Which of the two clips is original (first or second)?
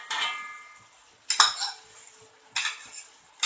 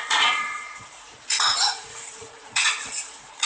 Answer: first